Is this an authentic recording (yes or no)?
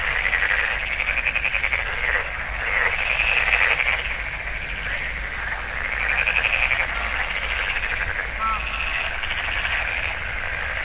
yes